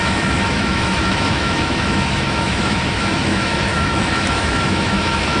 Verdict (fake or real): fake